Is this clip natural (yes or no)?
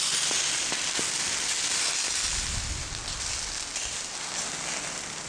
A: yes